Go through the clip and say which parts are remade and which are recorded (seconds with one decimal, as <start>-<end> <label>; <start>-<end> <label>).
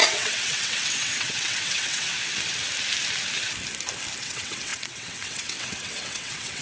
0.0-2.1 remade; 2.1-4.2 recorded; 4.2-6.6 remade